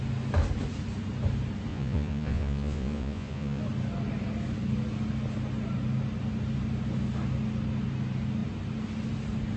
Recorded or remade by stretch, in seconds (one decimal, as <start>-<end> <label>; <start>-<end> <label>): 0.0-1.7 recorded; 1.7-3.6 remade; 3.6-9.6 recorded